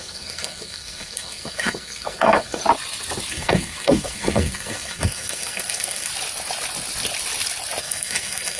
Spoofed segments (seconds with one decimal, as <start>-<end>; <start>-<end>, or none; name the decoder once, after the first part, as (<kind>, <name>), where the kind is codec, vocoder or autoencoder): 0.0-2.6 (codec, SNAC); 3.3-6.1; 7.8-8.6